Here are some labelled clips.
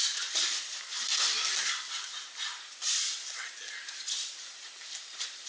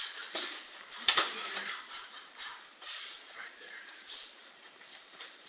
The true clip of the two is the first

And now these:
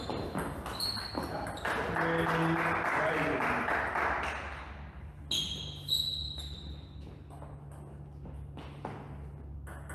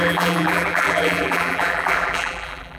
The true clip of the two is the first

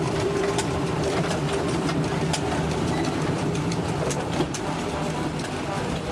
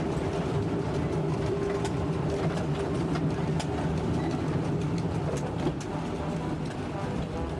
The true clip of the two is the second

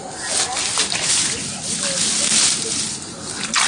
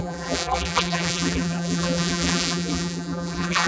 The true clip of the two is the first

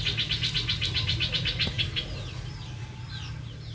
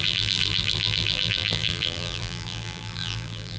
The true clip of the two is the first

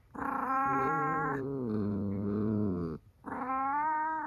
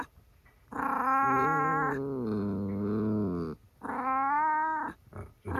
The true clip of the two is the second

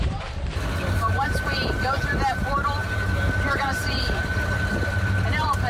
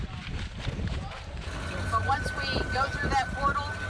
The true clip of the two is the second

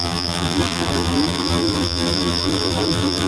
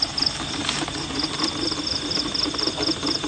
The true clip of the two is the second